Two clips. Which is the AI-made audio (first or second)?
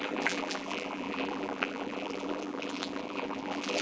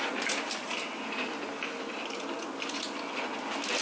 first